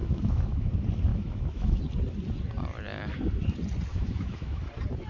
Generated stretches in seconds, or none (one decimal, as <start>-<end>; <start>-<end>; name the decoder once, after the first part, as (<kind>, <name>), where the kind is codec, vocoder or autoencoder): 0.0-0.7 (autoencoder, DAC-VAE); 1.1-1.8; 3.9-4.6